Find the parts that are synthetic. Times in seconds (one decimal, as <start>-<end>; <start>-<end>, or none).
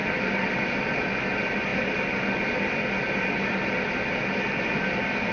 none